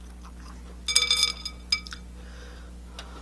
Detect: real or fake real